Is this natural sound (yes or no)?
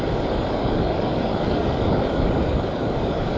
no